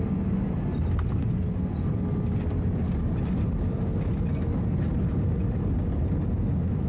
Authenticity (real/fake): real